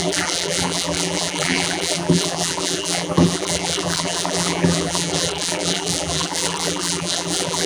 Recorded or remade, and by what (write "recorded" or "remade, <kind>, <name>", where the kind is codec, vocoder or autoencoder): remade, vocoder, BigVGAN v2